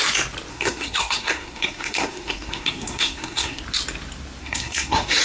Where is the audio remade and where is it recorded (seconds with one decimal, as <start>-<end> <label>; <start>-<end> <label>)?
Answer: 0.0-0.5 recorded; 0.5-3.6 remade; 3.6-4.4 recorded; 4.4-5.2 remade